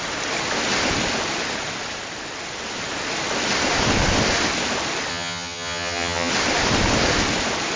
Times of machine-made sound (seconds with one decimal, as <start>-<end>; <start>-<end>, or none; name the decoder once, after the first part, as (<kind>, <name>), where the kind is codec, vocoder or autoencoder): 5.1-6.3 (vocoder, HiFi-GAN)